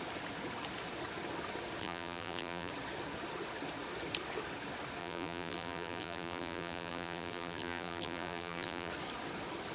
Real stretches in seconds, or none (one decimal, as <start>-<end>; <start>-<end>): 0.0-1.8; 2.7-5.0; 8.9-9.7